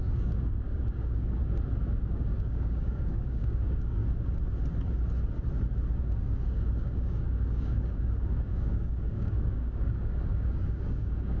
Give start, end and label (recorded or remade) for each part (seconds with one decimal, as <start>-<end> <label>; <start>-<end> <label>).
0.0-1.4 remade; 1.4-2.1 recorded; 2.1-4.0 remade; 4.0-6.0 recorded; 6.0-11.4 remade